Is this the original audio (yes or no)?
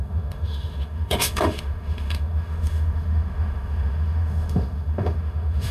no